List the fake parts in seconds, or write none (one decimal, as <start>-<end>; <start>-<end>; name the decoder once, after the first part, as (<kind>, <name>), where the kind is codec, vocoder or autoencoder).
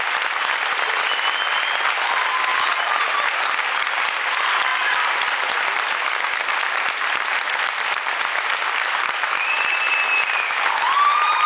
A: none